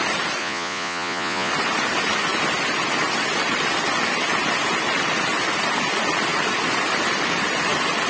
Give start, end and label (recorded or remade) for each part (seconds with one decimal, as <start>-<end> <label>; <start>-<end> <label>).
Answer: 0.0-0.4 recorded; 0.4-1.5 remade; 1.5-8.1 recorded